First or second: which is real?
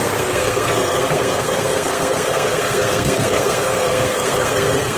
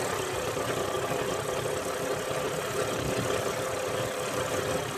second